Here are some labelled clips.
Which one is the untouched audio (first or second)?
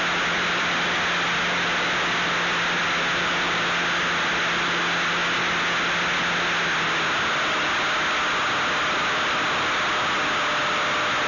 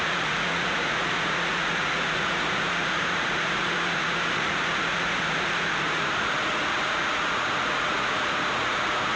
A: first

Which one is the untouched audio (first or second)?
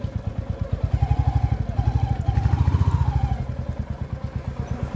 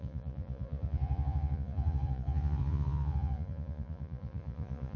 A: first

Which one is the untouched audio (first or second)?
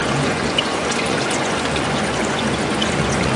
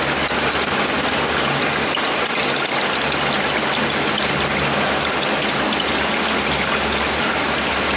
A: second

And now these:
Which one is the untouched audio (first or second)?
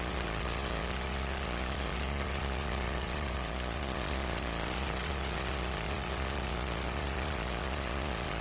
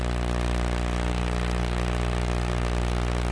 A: second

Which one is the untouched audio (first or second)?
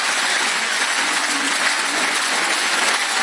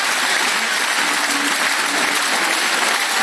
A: second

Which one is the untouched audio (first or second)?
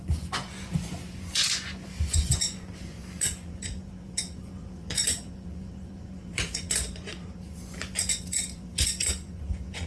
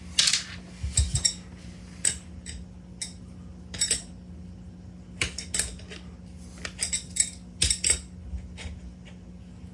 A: second